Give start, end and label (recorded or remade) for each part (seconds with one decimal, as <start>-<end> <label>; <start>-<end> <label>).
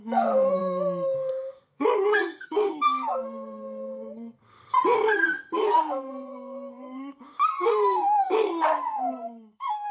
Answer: 0.0-0.6 remade; 0.6-1.3 recorded; 1.3-9.9 remade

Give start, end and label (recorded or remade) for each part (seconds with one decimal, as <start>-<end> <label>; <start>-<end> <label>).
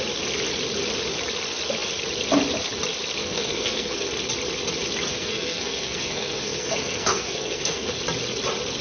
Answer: 0.0-3.2 recorded; 3.2-4.1 remade; 4.1-5.1 recorded; 5.1-8.0 remade; 8.0-8.8 recorded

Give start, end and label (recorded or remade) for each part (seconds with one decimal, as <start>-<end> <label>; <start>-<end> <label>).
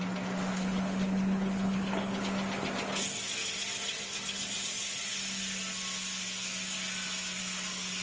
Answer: 0.0-0.5 recorded; 0.5-2.2 remade; 2.2-8.0 recorded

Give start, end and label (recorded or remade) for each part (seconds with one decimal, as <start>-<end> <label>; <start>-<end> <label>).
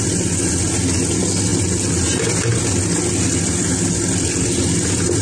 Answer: 0.0-5.2 recorded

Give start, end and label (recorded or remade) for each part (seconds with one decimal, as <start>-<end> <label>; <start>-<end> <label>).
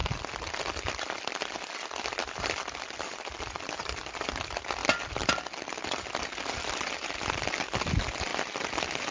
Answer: 0.0-9.1 recorded